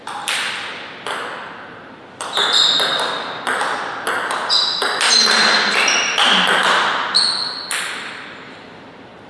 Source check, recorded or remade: recorded